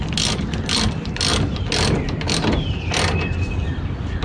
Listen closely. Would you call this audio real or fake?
real